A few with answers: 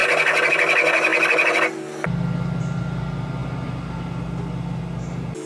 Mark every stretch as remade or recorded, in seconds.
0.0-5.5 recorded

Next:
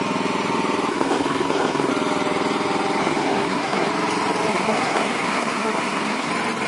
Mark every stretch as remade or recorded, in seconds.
0.0-0.9 recorded; 0.9-1.9 remade; 1.9-3.0 recorded; 3.0-3.9 remade; 3.9-4.5 recorded; 4.5-6.3 remade; 6.3-6.7 recorded

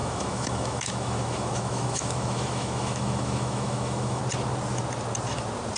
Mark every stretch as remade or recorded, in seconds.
0.0-4.2 remade; 4.2-5.8 recorded